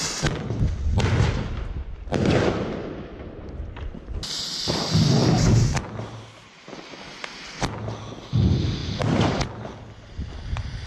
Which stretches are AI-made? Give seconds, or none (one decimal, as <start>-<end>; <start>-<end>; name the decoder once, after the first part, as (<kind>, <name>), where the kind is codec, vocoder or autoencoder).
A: none